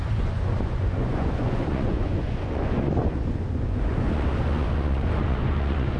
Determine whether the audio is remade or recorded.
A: remade